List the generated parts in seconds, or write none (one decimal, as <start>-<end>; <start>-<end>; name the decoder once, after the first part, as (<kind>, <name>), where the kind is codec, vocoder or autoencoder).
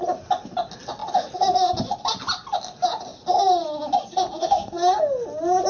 4.4-5.0 (codec, SNAC)